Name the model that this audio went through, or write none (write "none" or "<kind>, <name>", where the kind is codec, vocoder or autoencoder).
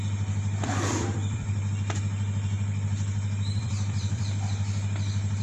vocoder, BigVGAN v2